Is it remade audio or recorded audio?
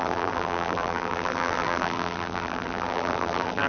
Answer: remade